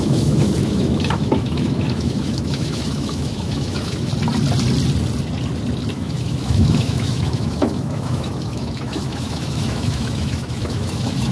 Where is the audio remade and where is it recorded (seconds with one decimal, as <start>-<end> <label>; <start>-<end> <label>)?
0.0-4.1 remade; 4.1-5.9 recorded; 5.9-11.3 remade